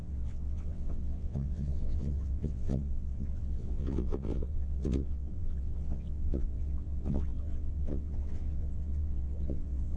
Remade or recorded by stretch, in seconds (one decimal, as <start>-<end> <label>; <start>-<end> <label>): 0.0-10.0 remade